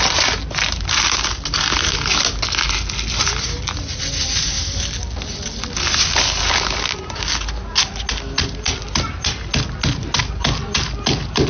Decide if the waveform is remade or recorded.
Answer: recorded